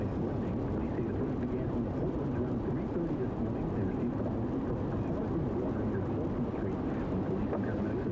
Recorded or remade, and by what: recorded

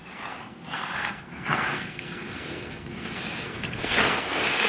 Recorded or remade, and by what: remade, codec, SNAC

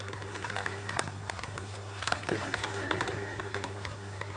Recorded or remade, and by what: remade, codec, SNAC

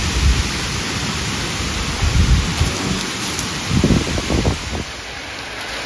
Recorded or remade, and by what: recorded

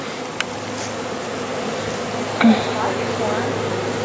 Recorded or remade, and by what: recorded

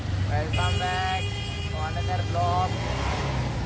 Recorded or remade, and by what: recorded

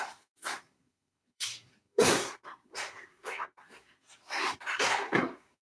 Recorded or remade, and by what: remade, codec, SNAC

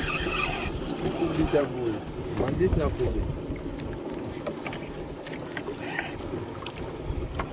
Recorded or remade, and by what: recorded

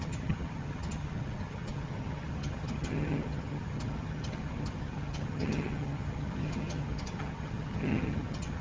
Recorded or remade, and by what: remade, vocoder, HiFi-GAN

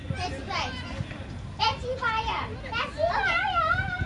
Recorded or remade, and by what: recorded